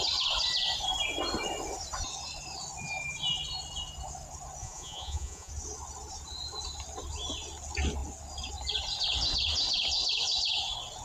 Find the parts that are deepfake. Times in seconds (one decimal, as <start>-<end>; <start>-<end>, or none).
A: 4.6-5.5